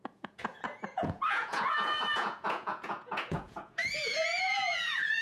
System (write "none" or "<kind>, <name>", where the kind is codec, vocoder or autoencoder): vocoder, Vocos